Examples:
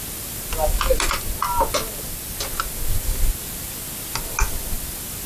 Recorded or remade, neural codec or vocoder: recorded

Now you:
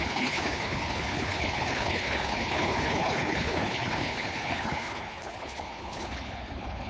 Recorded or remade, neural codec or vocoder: remade, codec, HILCodec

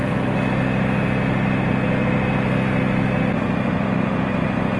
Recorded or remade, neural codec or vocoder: recorded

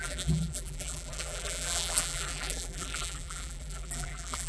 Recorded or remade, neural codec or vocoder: remade, vocoder, BigVGAN v2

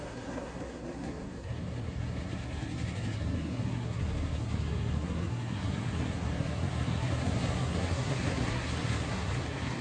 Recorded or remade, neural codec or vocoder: remade, codec, SNAC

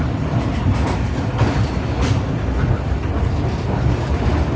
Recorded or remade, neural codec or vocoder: recorded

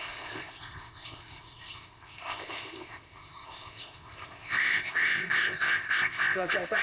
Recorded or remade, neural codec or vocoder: remade, codec, ZipCodec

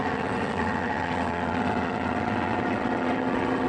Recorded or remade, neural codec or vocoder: remade, vocoder, WaveNeXt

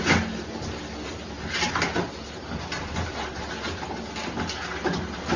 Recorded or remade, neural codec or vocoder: recorded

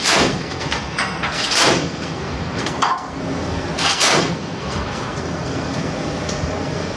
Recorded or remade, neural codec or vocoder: remade, codec, SNAC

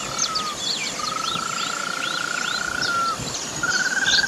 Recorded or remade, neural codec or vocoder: recorded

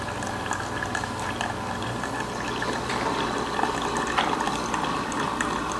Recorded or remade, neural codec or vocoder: recorded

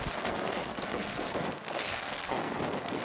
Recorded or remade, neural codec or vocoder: remade, codec, SNAC